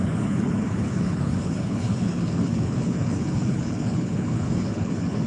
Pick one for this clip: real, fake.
fake